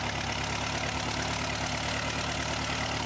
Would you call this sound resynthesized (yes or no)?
no